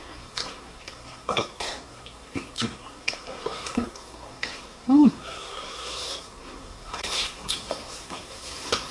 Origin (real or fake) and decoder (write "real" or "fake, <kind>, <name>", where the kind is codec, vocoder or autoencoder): fake, codec, SNAC